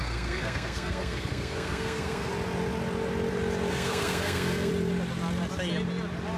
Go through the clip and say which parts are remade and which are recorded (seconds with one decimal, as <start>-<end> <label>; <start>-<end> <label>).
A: 0.0-2.3 remade; 2.3-3.7 recorded; 3.7-4.7 remade; 4.7-6.4 recorded